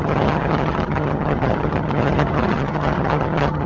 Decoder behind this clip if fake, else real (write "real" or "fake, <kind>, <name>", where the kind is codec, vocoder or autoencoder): fake, vocoder, HiFi-GAN